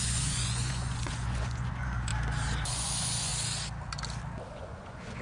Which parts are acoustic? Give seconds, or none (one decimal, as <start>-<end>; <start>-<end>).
2.1-2.7; 3.3-4.5